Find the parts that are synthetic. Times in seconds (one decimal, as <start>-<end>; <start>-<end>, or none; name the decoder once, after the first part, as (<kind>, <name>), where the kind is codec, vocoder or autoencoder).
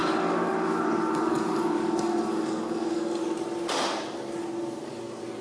0.0-3.2 (codec, DAC)